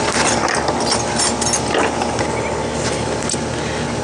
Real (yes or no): yes